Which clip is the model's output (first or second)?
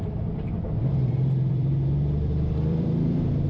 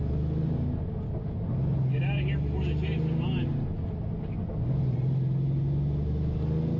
first